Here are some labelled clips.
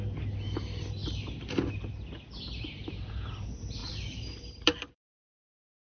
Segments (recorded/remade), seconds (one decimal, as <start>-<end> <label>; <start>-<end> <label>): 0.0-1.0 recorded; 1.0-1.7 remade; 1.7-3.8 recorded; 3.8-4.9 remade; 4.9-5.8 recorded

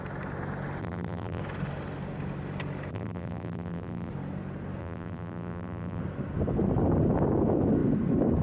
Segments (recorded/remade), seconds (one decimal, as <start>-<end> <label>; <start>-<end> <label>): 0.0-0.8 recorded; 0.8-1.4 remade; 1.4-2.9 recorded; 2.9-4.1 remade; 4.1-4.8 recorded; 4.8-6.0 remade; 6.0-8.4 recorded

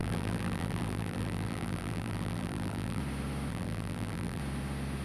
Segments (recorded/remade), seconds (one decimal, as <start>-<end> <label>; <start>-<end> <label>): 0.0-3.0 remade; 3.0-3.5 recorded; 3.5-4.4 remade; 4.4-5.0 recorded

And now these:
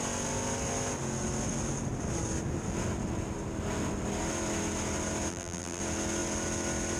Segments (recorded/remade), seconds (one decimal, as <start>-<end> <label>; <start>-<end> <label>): 0.0-5.3 recorded; 5.3-5.8 remade; 5.8-7.0 recorded

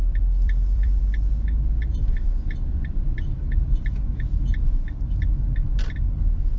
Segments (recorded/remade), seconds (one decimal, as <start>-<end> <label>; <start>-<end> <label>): 0.0-1.0 remade; 1.0-2.0 recorded; 2.0-2.9 remade; 2.9-6.6 recorded

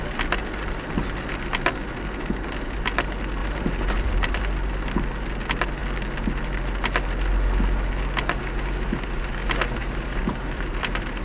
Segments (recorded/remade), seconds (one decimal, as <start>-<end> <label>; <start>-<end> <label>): 0.0-3.4 recorded; 3.4-4.4 remade; 4.4-9.8 recorded; 9.8-11.2 remade

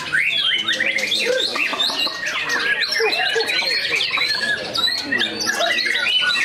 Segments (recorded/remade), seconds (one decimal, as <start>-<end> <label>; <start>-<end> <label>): 0.0-1.7 remade; 1.7-3.3 recorded; 3.3-6.4 remade

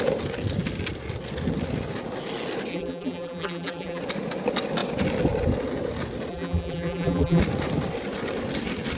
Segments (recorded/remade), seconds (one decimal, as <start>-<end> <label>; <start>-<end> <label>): 0.0-2.7 recorded; 2.7-4.0 remade; 4.0-6.3 recorded; 6.3-7.4 remade; 7.4-9.0 recorded